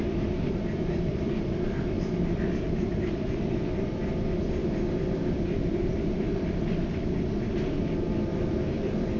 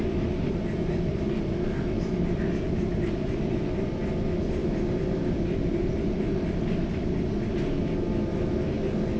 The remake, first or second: first